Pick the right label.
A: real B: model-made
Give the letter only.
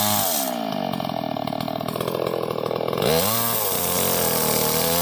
A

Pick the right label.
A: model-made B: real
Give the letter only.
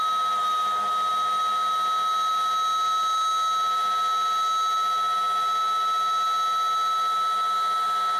B